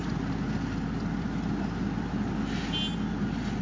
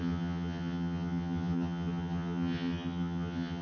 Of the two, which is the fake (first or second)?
second